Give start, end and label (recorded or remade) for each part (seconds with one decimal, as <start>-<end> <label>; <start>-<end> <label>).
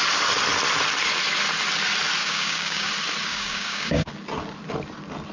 0.0-2.2 recorded; 2.2-2.9 remade; 2.9-3.3 recorded; 3.3-4.1 remade; 4.1-5.3 recorded